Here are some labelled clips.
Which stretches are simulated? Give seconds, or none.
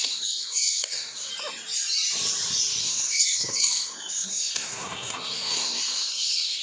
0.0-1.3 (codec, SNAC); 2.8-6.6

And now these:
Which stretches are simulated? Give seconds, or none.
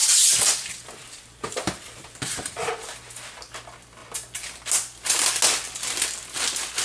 0.0-2.7 (vocoder, BigVGAN v2)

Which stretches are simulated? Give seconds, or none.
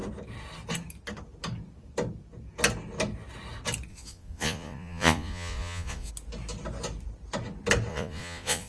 3.9-6.1 (vocoder, Vocos); 7.9-8.7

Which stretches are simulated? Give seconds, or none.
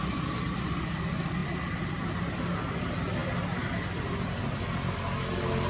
none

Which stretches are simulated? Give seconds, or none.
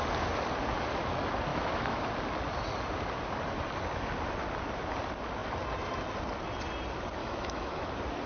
1.5-2.0 (autoencoder, DAC-VAE); 7.2-7.9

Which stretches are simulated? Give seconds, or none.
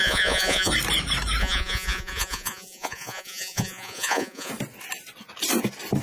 0.0-0.7 (vocoder, Vocos); 1.4-4.5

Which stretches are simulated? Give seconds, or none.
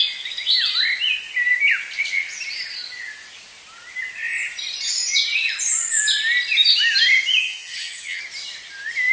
7.4-8.2 (vocoder, HiFi-GAN)